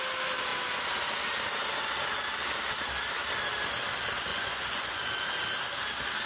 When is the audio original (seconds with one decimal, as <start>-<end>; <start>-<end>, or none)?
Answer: 0.0-4.3; 5.1-6.3